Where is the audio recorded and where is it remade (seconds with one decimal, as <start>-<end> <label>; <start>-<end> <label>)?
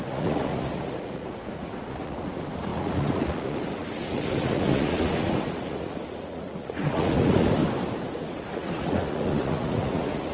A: 0.0-7.6 remade; 7.6-8.1 recorded; 8.1-10.3 remade